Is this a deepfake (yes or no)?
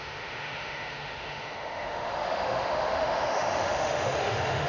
yes